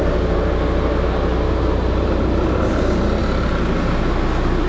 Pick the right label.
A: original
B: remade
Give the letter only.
A